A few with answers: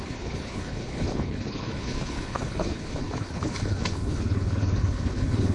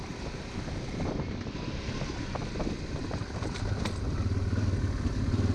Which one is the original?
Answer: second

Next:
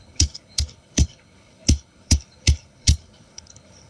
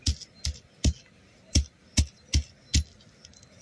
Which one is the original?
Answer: second